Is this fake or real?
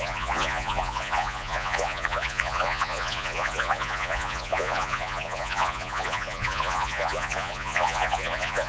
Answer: fake